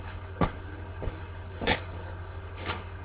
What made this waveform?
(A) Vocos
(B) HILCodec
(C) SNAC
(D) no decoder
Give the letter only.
B